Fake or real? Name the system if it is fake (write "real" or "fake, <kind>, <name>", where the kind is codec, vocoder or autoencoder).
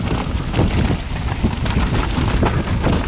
real